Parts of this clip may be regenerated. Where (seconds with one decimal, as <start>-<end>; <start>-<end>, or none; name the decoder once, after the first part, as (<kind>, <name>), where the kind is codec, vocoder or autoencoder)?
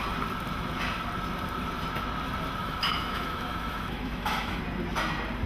2.6-4.6 (autoencoder, DAC-VAE)